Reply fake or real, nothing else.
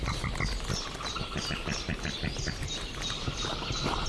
real